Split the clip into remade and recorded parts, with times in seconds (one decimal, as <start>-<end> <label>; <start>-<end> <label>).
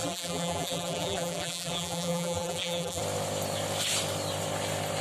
0.0-3.0 remade; 3.0-5.0 recorded